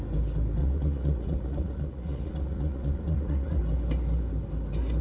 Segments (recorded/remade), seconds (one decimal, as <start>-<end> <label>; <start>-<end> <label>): 0.0-0.6 recorded; 0.6-3.6 remade; 3.6-5.0 recorded